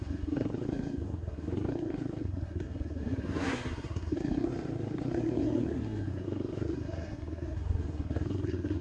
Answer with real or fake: fake